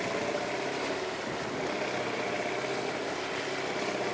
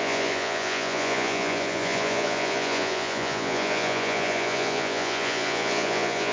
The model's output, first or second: second